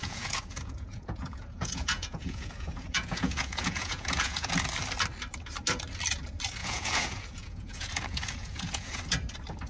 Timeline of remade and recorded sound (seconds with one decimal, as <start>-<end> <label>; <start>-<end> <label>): 0.0-4.5 remade; 4.5-6.6 recorded; 6.6-9.0 remade; 9.0-9.7 recorded